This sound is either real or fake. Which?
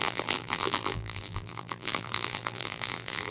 fake